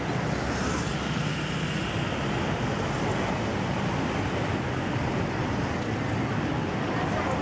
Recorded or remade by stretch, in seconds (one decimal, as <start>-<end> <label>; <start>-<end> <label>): 0.0-3.5 recorded; 3.5-6.3 remade; 6.3-7.4 recorded